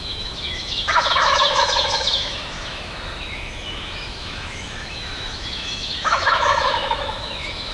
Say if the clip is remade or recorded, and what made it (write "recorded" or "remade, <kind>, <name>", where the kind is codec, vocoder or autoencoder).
remade, autoencoder, DAC-VAE